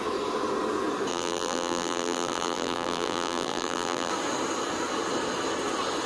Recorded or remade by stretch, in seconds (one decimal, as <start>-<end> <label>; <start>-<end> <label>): 0.0-1.1 recorded; 1.1-4.1 remade; 4.1-6.1 recorded